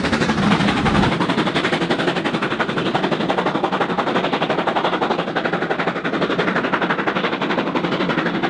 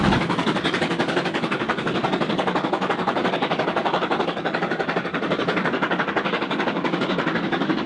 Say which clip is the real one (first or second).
first